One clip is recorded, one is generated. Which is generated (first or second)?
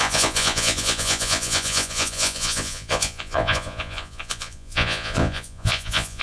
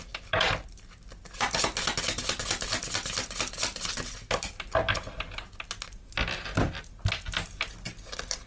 first